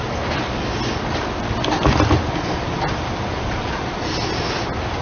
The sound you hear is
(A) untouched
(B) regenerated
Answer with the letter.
A